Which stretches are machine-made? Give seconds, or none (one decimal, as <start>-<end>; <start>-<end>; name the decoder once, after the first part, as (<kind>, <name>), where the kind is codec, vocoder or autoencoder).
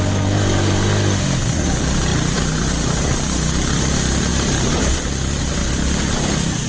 2.1-3.5 (vocoder, BigVGAN v2); 4.3-5.1; 5.6-6.7